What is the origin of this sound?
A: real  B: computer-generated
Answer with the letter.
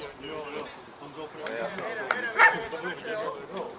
A